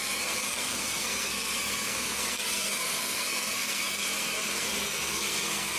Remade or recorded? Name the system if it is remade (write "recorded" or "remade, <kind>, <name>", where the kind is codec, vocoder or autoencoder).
remade, codec, SNAC